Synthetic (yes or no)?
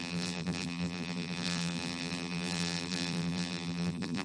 yes